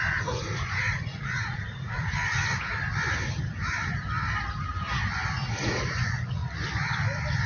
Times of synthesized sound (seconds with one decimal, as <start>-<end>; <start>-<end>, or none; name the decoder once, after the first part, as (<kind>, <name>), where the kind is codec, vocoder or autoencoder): 0.0-2.1 (vocoder, Vocos); 5.5-6.4